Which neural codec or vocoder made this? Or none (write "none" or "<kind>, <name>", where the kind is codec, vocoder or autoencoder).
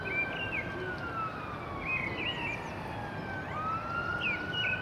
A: none